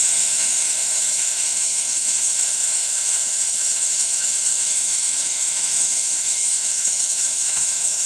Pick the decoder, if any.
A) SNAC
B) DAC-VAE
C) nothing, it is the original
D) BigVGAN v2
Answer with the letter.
B